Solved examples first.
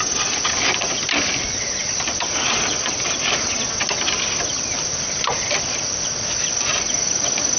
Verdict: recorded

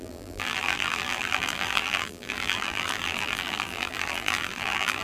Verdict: remade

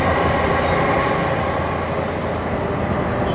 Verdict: recorded